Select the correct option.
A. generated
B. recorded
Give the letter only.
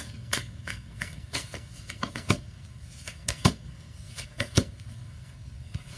A